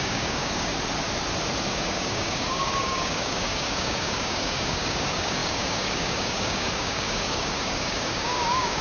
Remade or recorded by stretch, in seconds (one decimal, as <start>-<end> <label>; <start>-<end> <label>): 0.0-0.7 remade; 0.7-1.7 recorded; 1.7-8.8 remade